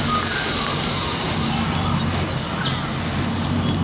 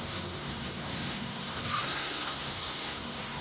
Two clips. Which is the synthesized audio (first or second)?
second